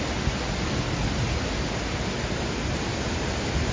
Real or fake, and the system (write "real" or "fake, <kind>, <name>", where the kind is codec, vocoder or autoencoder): real